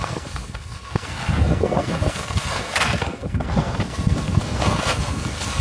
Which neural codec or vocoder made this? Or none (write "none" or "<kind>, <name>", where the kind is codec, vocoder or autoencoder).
codec, SNAC